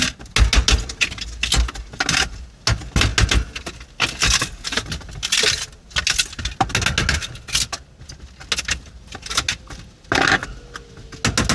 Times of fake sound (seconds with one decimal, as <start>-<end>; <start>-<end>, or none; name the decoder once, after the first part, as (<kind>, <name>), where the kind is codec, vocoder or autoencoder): none